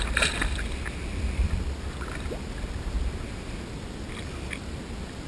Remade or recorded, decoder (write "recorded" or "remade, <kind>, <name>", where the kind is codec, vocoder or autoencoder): recorded